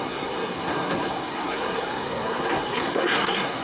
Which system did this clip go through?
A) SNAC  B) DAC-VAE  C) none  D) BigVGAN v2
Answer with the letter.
A